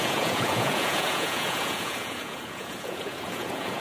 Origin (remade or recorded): remade